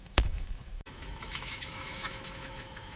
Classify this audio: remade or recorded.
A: remade